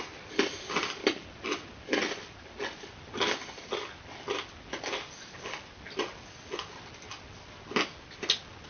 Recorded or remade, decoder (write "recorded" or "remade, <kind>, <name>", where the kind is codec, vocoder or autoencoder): recorded